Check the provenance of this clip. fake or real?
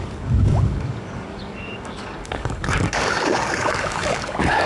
fake